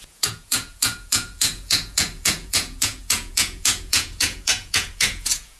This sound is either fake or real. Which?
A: fake